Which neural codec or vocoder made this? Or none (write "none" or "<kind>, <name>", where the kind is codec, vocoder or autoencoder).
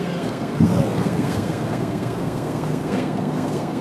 codec, SNAC